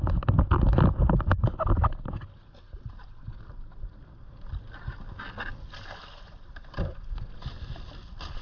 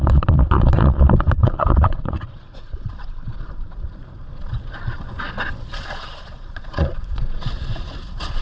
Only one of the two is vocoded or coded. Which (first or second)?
second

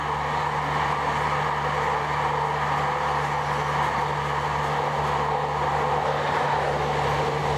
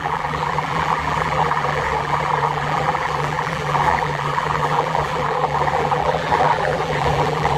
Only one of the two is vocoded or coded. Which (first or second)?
second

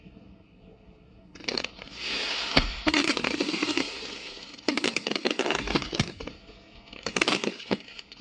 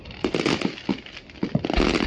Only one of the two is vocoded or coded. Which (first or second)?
first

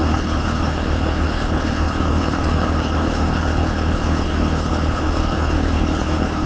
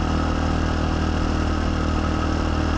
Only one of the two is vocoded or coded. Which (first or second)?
first